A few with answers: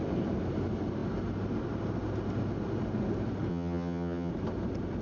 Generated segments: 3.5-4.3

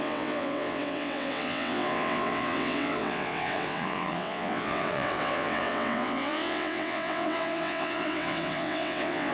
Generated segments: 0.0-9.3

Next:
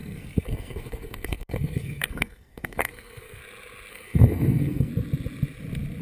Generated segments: 0.0-3.4; 3.9-4.9

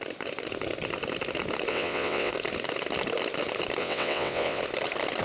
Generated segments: 1.7-2.3; 3.8-4.6

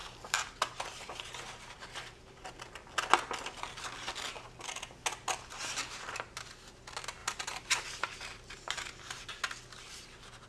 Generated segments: 0.0-2.6; 7.2-9.3

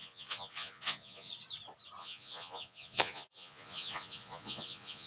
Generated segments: 0.0-1.3; 2.0-5.1

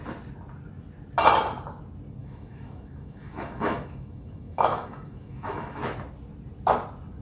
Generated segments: 2.2-5.8

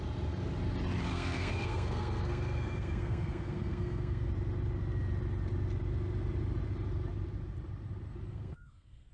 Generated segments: 1.1-4.3; 8.3-9.1